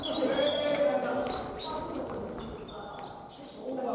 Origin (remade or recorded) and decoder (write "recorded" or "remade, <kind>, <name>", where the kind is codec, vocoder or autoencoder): recorded